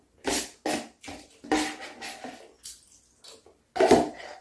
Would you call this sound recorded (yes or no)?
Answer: yes